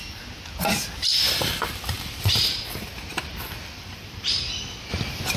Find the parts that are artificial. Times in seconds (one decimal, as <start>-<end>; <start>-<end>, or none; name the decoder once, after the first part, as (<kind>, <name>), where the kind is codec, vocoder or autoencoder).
1.1-4.3 (vocoder, BigVGAN v2)